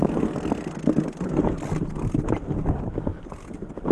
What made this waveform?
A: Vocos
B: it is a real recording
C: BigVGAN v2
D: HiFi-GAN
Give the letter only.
B